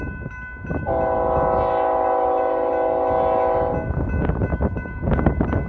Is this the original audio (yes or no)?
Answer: yes